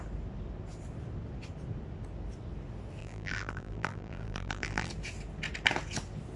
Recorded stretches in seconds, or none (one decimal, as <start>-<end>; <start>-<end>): 0.0-3.0; 4.9-6.4